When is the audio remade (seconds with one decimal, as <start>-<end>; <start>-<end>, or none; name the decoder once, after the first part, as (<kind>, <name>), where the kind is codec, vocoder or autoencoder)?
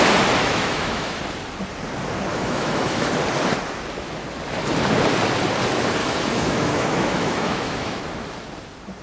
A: 0.4-1.2 (autoencoder, DAC-VAE); 2.3-3.1; 6.0-8.0